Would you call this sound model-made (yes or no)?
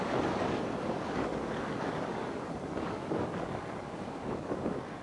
yes